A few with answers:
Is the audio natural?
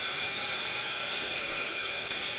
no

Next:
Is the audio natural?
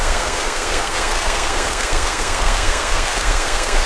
no